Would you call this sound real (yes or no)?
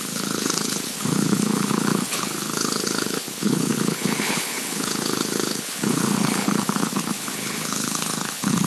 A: no